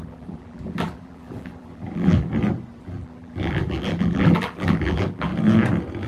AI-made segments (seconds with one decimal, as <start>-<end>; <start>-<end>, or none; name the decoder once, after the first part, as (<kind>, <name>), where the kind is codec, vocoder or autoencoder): 0.0-2.3 (vocoder, BigVGAN v2); 2.8-5.3